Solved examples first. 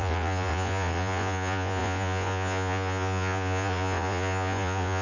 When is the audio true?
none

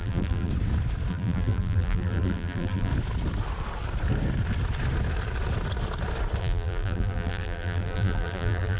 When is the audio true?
0.5-1.1; 2.9-6.4

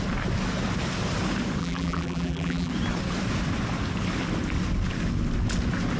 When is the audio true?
0.0-1.6; 2.7-6.0